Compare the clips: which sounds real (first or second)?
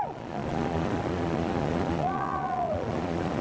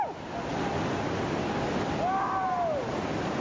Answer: second